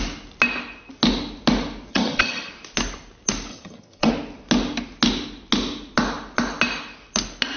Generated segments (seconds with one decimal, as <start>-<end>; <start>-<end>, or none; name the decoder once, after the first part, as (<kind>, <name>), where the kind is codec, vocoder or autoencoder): 1.9-2.5 (vocoder, HiFi-GAN); 3.5-4.1